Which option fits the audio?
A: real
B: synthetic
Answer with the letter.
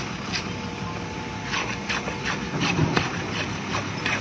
A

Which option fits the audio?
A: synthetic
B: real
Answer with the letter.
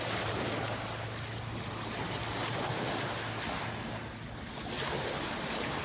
B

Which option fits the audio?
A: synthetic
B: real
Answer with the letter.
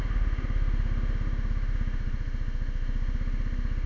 A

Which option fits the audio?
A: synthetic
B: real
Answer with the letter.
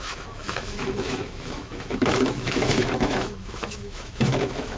A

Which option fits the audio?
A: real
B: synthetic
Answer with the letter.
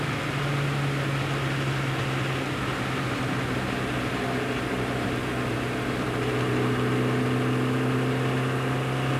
A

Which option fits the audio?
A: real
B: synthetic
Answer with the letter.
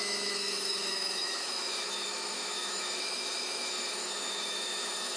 B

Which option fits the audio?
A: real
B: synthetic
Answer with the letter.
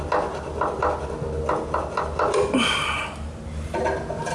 A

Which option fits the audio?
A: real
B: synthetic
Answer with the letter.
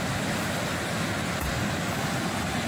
A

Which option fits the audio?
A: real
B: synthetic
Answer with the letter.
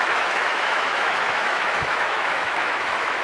B